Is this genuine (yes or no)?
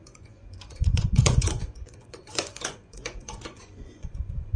no